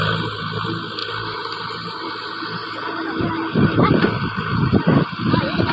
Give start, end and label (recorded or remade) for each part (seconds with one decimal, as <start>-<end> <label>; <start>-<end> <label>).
0.0-5.7 recorded